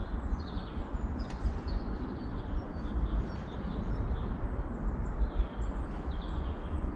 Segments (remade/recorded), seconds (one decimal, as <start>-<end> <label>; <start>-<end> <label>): 0.0-2.8 remade; 2.8-6.3 recorded; 6.3-7.0 remade